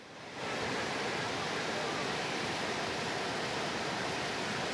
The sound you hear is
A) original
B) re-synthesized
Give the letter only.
B